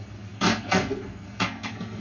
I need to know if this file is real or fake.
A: fake